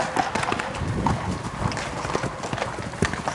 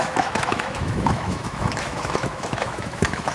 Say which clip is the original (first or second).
first